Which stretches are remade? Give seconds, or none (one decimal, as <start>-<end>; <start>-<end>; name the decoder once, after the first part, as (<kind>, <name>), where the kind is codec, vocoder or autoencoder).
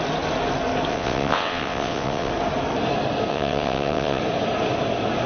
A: 0.9-2.3 (vocoder, WaveNeXt); 3.3-4.2